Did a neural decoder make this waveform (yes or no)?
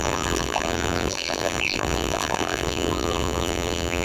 yes